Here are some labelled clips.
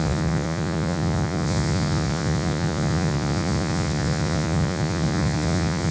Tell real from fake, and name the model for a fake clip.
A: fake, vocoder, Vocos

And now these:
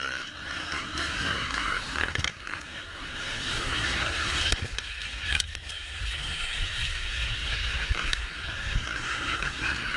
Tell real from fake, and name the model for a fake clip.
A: fake, codec, SNAC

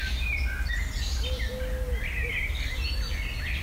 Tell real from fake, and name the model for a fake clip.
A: real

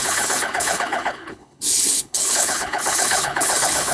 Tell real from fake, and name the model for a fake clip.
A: fake, codec, HILCodec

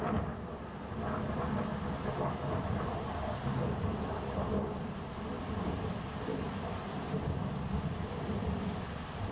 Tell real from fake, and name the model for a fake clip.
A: fake, vocoder, BigVGAN v2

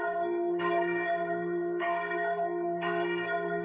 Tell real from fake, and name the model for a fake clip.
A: fake, codec, SNAC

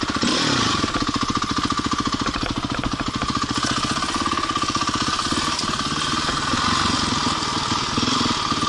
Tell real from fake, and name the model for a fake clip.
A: real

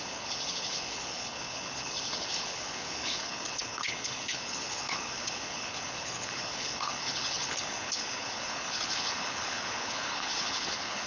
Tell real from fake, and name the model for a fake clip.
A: fake, codec, HILCodec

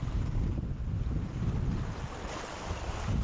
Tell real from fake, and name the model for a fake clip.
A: real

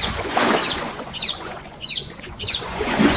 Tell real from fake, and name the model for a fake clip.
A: fake, vocoder, Vocos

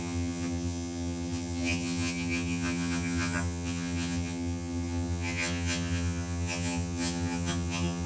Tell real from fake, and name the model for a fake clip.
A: fake, vocoder, HiFi-GAN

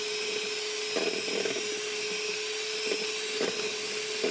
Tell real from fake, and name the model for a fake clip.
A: real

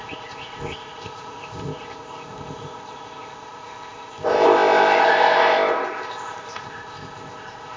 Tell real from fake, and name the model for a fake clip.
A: fake, codec, ZipCodec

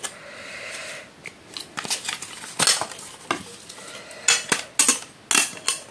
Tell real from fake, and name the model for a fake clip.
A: real